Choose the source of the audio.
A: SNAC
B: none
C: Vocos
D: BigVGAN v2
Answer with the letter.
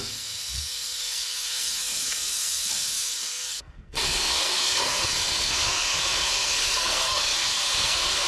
A